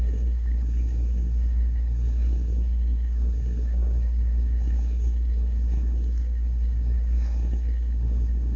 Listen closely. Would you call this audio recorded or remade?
remade